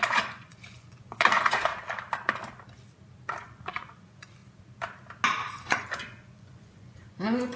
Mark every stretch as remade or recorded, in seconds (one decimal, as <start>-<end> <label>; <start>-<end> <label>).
0.0-1.7 remade; 1.7-3.4 recorded; 3.4-4.4 remade; 4.4-5.5 recorded; 5.5-7.6 remade